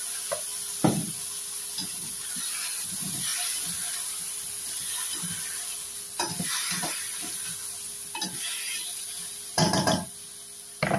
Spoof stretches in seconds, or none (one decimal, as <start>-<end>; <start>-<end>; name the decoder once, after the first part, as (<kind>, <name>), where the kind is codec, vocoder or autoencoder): 0.5-1.3 (vocoder, BigVGAN v2); 3.3-7.9

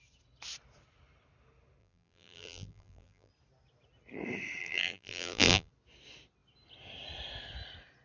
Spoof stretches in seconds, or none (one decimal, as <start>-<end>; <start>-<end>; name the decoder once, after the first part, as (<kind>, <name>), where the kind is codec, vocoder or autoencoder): 1.8-3.3 (vocoder, BigVGAN v2); 4.6-5.7

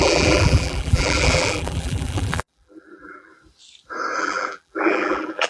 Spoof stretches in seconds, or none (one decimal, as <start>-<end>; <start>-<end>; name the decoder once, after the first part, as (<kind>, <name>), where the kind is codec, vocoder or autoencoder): 0.0-3.3 (vocoder, BigVGAN v2); 4.2-5.5

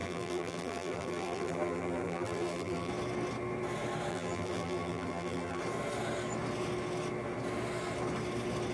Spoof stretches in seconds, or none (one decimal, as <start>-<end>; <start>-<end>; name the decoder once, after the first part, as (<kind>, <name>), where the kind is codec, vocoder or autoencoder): 0.0-2.9 (vocoder, BigVGAN v2); 4.1-5.6

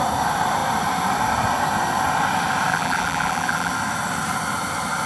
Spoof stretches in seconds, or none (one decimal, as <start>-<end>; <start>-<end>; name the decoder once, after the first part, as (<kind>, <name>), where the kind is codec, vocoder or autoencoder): 2.7-3.7 (vocoder, BigVGAN v2)

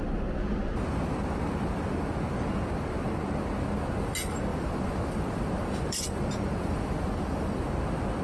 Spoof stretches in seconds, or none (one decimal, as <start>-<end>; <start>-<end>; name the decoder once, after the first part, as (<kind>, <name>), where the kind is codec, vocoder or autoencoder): 4.5-7.7 (vocoder, BigVGAN v2)

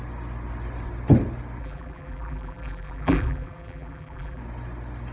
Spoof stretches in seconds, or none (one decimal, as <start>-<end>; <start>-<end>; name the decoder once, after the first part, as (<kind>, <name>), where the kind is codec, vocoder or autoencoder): 1.6-4.4 (vocoder, BigVGAN v2)

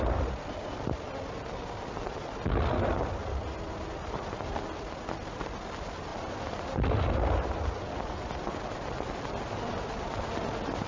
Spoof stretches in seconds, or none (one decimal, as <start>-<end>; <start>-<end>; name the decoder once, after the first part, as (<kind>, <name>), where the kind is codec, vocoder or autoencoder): 6.1-6.6 (vocoder, BigVGAN v2)